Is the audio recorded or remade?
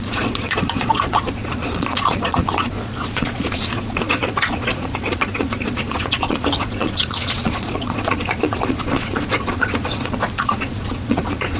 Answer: remade